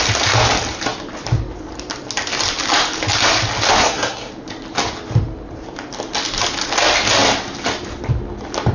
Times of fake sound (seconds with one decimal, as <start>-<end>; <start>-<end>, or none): 3.8-4.3